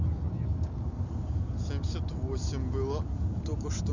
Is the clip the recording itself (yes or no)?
yes